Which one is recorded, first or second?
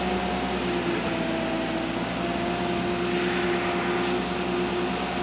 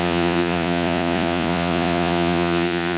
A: first